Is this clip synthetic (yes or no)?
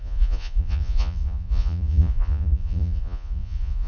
yes